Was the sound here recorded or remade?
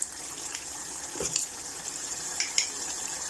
remade